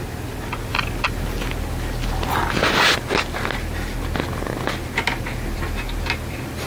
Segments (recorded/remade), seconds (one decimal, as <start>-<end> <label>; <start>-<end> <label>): 0.0-0.7 recorded; 0.7-2.8 remade; 2.8-6.7 recorded